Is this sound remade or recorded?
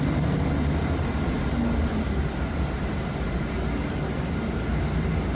recorded